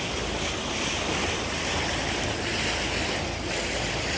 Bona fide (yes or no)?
yes